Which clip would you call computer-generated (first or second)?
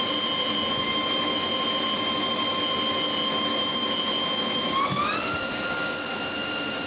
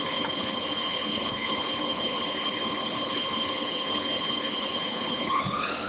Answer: second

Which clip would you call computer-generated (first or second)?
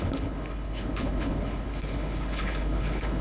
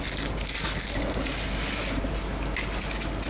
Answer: first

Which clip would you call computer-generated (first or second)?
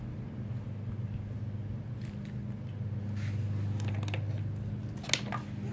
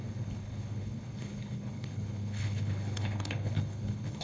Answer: second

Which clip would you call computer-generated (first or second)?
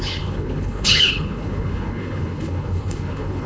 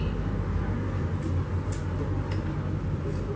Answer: first